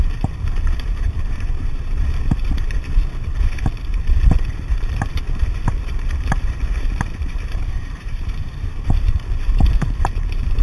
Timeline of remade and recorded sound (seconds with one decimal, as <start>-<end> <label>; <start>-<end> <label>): 0.0-3.0 remade; 3.0-4.5 recorded; 4.5-10.6 remade